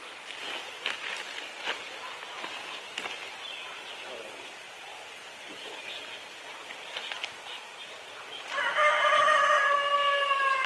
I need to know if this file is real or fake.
real